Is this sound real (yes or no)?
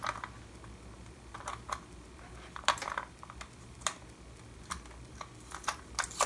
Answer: yes